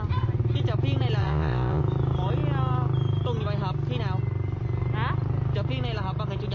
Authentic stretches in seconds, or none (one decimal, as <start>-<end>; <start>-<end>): 0.0-1.2; 1.8-6.5